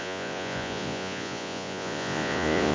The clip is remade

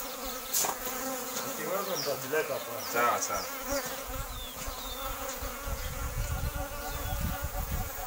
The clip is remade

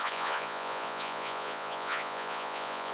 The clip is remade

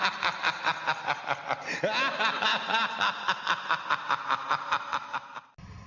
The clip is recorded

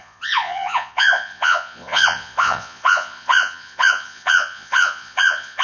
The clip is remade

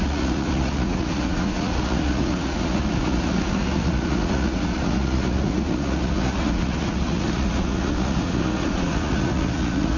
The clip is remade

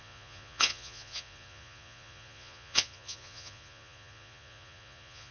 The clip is remade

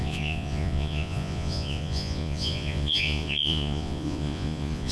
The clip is remade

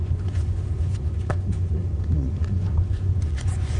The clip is remade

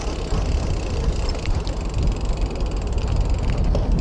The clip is recorded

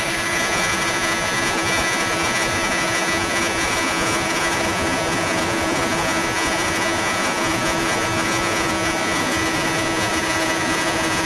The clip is remade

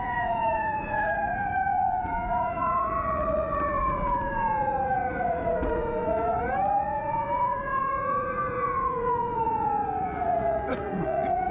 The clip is remade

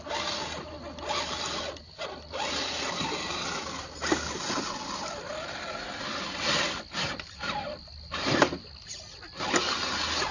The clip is recorded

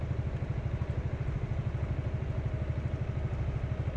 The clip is recorded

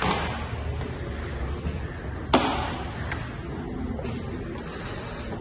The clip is recorded